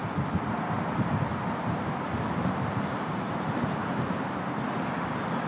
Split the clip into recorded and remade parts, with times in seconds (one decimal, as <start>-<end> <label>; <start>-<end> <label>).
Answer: 0.0-1.3 recorded; 1.3-4.6 remade; 4.6-5.5 recorded